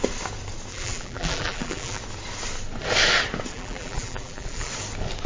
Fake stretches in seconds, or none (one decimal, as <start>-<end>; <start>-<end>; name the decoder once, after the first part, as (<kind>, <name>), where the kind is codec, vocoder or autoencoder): 0.7-2.0 (vocoder, BigVGAN v2); 3.5-4.7